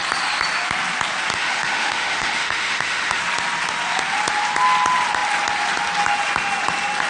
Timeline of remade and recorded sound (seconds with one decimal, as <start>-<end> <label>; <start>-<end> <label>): 0.0-1.3 recorded; 1.3-3.2 remade; 3.2-7.1 recorded